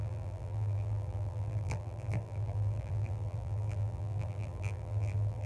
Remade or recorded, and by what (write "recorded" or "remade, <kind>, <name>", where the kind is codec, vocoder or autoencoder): remade, vocoder, BigVGAN v2